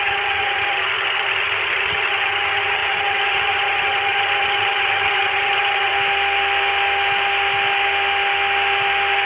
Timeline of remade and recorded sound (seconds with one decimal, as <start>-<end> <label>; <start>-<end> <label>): 0.0-5.9 remade; 5.9-9.3 recorded

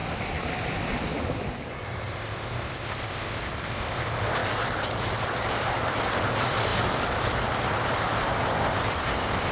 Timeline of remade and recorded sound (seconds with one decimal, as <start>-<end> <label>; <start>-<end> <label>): 0.0-0.7 recorded; 0.7-4.4 remade; 4.4-5.7 recorded; 5.7-6.7 remade; 6.7-7.7 recorded; 7.7-9.5 remade

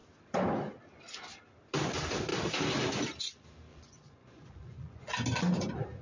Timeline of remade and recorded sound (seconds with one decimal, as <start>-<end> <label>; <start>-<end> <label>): 0.0-3.7 recorded; 3.7-5.1 remade; 5.1-6.0 recorded

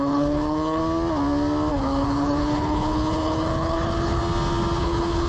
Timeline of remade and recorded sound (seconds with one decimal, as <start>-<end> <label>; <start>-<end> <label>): 0.0-0.8 remade; 0.8-1.7 recorded; 1.7-4.2 remade; 4.2-4.8 recorded; 4.8-5.3 remade

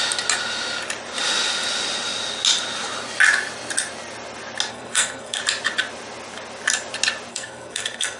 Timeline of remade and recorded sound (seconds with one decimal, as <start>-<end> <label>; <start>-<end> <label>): 0.0-4.7 recorded; 4.7-5.4 remade; 5.4-7.3 recorded; 7.3-8.2 remade

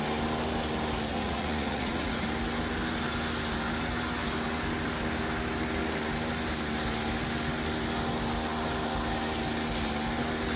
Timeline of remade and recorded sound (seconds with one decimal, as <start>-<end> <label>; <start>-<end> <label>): 0.0-1.1 recorded; 1.1-2.2 remade; 2.2-10.6 recorded

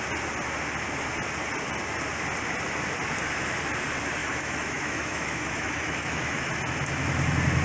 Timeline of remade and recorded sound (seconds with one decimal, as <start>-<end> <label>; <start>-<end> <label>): 0.0-4.2 recorded; 4.2-6.5 remade; 6.5-7.6 recorded

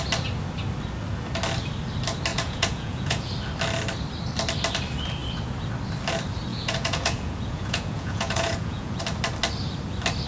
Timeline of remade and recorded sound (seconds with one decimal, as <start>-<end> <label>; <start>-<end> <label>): 0.0-2.3 recorded; 2.3-3.3 remade; 3.3-6.5 recorded; 6.5-9.0 remade; 9.0-10.3 recorded